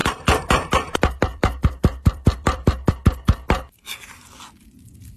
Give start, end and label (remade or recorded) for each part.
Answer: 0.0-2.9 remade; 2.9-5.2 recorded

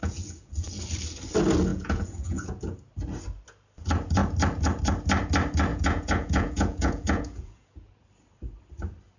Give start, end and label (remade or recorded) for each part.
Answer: 0.0-0.7 remade; 0.7-1.7 recorded; 1.7-2.7 remade; 2.7-5.7 recorded; 5.7-7.9 remade; 7.9-9.2 recorded

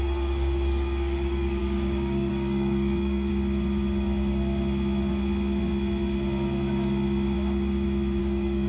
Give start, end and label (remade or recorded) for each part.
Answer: 0.0-3.3 remade; 3.3-8.2 recorded; 8.2-8.7 remade